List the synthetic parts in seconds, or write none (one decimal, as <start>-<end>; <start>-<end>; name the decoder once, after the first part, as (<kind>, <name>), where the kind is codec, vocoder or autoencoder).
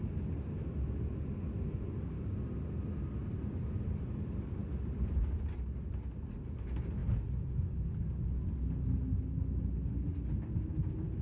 none